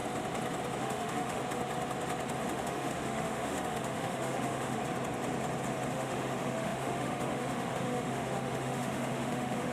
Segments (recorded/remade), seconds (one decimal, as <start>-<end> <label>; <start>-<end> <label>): 0.0-0.8 recorded; 0.8-1.4 remade; 1.4-2.5 recorded; 2.5-4.8 remade; 4.8-5.9 recorded; 5.9-9.7 remade